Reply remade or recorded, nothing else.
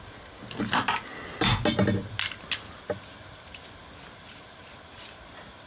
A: recorded